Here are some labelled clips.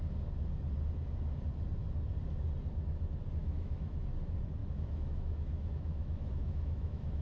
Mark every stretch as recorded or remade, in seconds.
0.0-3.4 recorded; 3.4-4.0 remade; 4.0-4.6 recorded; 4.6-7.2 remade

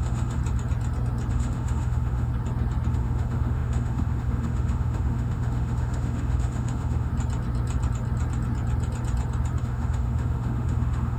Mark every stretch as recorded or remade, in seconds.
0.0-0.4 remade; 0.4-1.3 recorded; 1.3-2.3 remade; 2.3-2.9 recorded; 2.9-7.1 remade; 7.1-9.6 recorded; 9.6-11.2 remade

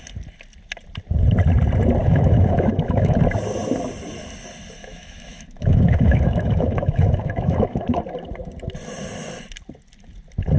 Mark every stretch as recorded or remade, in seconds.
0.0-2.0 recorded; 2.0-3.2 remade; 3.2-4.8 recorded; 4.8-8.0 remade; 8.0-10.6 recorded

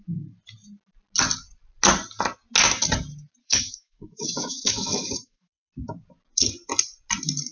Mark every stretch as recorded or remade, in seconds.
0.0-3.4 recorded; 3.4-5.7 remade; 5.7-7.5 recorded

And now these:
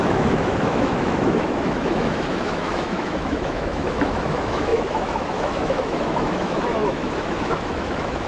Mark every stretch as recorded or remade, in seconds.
0.0-8.3 remade

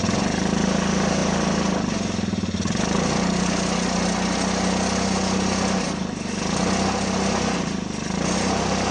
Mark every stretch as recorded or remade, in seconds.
0.0-8.9 recorded

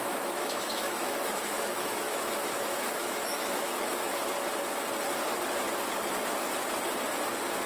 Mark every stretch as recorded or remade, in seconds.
0.0-4.2 remade; 4.2-7.7 recorded

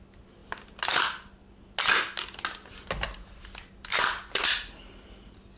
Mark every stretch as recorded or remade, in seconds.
0.0-5.6 recorded